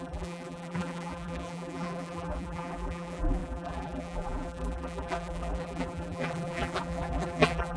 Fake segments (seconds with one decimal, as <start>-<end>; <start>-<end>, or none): 0.0-7.8